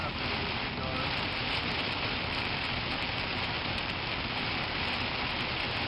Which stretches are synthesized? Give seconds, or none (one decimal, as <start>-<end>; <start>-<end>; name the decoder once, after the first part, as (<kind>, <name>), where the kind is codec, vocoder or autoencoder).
none